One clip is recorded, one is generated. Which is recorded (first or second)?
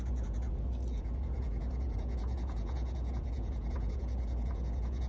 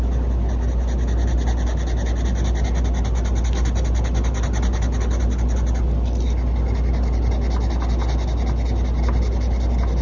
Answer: second